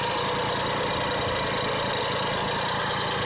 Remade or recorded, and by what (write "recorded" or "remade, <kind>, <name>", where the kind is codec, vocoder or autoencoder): recorded